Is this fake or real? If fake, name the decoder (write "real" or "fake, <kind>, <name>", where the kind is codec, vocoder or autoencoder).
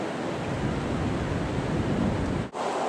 real